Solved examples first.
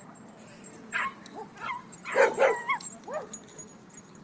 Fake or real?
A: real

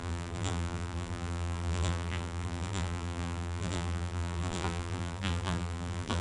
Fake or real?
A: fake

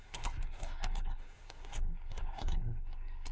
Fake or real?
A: fake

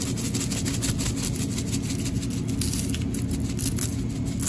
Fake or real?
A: real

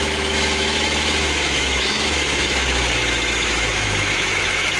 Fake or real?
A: fake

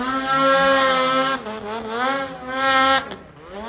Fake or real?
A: real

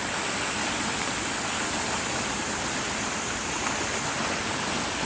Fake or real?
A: real